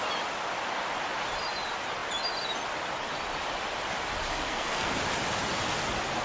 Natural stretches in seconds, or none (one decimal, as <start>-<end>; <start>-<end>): 0.0-4.3; 4.9-6.2